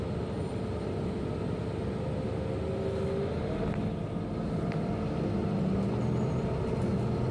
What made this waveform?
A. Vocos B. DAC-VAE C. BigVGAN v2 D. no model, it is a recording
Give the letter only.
D